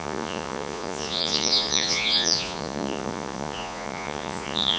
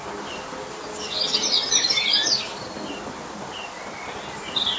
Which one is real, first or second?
second